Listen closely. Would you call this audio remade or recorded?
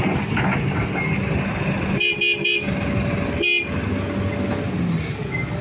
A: recorded